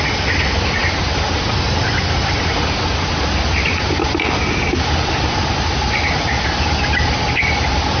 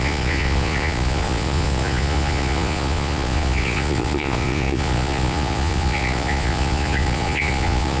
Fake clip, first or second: second